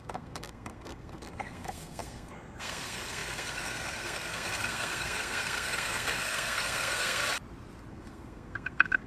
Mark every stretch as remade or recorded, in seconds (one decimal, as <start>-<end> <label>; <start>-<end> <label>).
0.0-7.2 remade; 7.2-7.9 recorded; 7.9-9.1 remade